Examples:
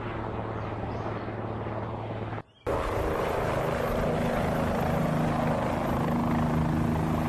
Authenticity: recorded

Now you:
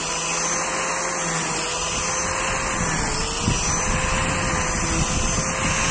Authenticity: recorded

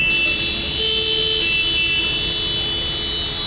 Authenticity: recorded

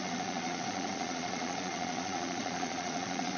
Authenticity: remade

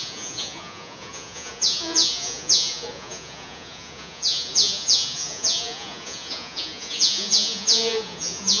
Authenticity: remade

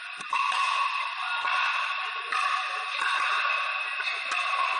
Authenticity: recorded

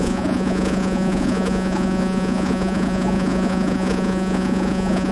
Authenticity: remade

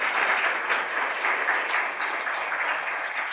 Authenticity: recorded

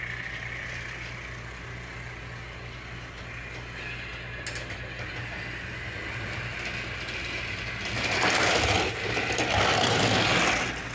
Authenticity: recorded